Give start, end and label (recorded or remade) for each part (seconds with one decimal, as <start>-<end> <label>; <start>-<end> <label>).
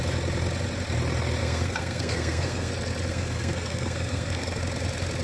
0.0-1.4 recorded; 1.4-2.7 remade; 2.7-3.1 recorded; 3.1-4.6 remade; 4.6-5.2 recorded